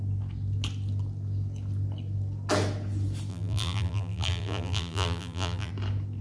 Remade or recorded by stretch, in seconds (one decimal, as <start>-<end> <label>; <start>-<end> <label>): 0.0-3.3 recorded; 3.3-5.7 remade; 5.7-6.2 recorded